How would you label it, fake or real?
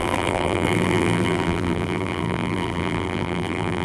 fake